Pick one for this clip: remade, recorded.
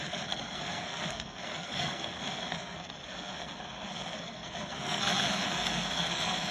remade